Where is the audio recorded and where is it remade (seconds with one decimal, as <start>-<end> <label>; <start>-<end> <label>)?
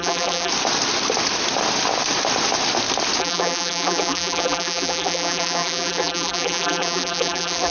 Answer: 0.0-0.5 remade; 0.5-3.2 recorded; 3.2-7.7 remade